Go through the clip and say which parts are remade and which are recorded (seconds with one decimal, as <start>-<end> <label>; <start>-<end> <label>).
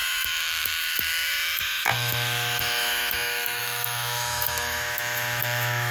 0.0-5.9 remade